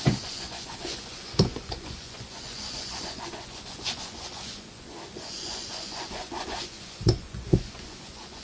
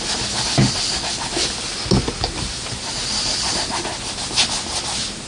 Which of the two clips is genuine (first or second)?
second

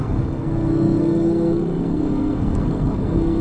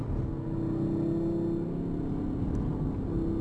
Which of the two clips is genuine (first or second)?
second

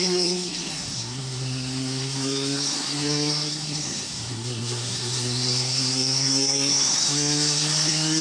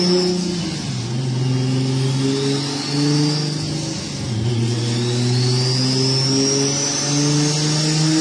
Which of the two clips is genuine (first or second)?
second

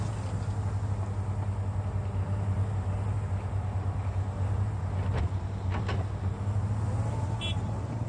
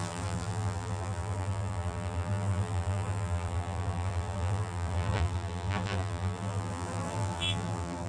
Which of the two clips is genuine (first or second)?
first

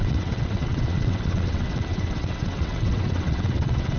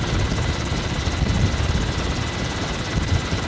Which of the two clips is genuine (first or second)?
second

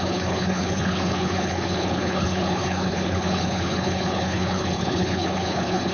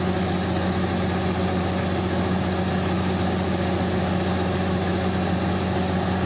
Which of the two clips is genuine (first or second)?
second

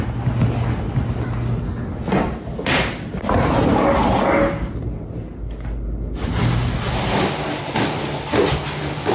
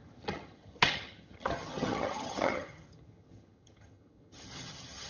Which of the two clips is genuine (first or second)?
first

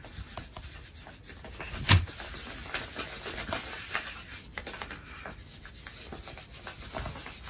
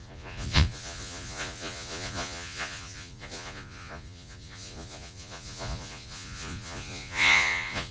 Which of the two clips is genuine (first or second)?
first